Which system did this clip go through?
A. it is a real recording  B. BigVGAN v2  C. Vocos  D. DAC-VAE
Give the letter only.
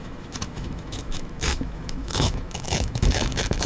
D